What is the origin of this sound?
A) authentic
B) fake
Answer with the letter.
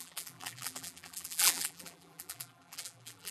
B